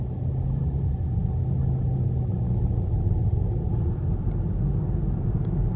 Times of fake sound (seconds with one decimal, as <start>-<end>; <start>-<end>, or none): none